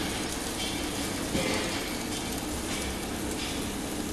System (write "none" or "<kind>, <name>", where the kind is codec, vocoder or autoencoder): none